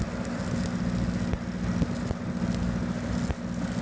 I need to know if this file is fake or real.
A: real